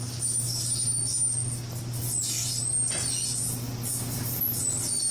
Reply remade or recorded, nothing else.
recorded